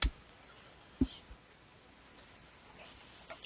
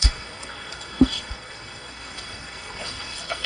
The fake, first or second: second